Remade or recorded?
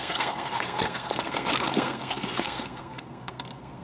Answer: remade